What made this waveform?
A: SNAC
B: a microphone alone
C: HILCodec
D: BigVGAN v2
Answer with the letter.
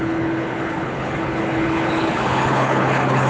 C